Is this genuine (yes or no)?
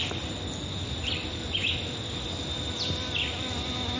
yes